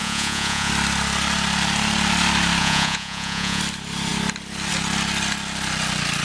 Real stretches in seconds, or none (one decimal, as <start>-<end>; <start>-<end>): 0.7-2.6; 3.6-6.2